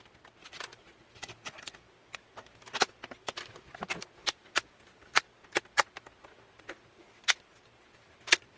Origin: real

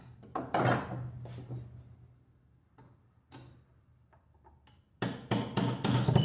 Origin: real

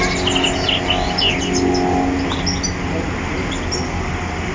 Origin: real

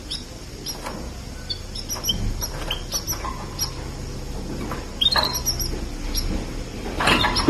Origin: real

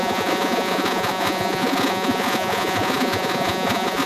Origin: fake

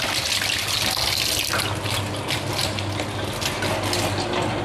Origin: real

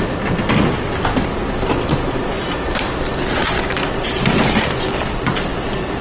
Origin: fake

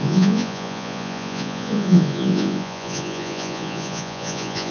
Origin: fake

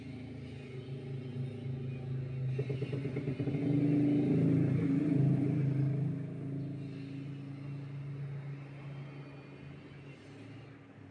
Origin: real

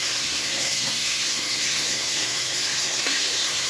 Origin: fake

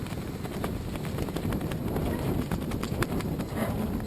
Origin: real